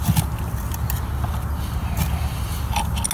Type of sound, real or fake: real